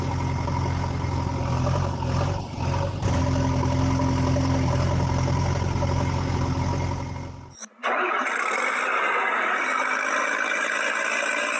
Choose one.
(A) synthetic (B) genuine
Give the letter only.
B